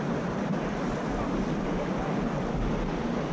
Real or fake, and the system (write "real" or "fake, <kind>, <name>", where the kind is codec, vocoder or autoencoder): real